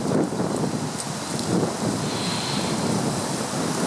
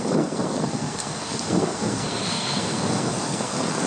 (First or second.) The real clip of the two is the first